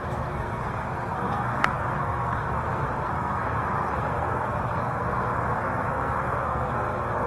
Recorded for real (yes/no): no